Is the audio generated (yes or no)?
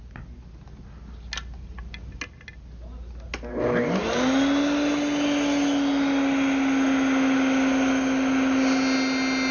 no